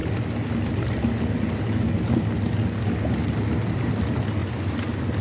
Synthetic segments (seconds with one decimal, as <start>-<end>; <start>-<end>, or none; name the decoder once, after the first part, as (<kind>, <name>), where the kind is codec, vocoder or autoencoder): 4.4-5.2 (vocoder, BigVGAN v2)